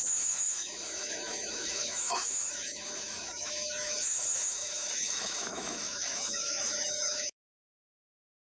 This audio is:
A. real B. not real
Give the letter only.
B